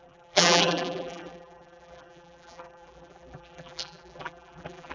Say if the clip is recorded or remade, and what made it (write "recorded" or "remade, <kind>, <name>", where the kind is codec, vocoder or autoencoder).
remade, vocoder, BigVGAN v2